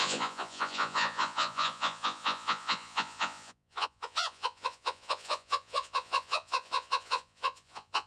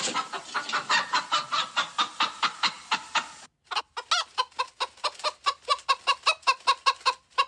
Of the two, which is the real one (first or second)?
second